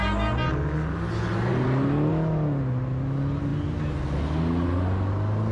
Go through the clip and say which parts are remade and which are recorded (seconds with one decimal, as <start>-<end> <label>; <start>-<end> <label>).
0.0-5.5 recorded